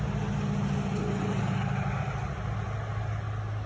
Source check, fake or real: real